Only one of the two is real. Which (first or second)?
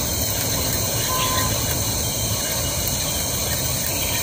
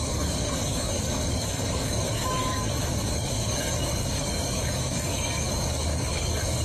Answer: first